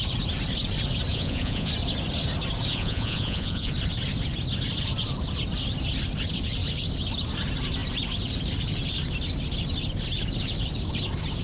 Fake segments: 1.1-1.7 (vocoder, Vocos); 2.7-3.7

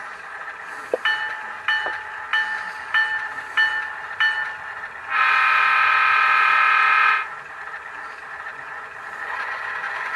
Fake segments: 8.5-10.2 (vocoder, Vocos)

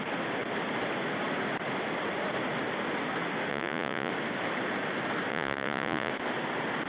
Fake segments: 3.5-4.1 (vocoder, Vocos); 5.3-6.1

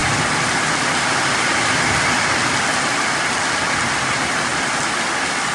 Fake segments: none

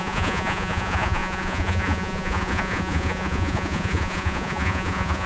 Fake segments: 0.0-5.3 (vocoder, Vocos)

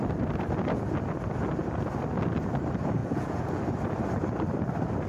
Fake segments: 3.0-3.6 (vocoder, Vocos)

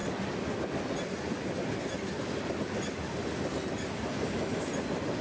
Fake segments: none

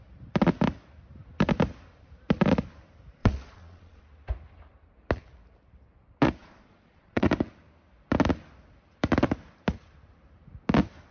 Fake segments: 3.2-4.0 (vocoder, Vocos); 6.4-7.3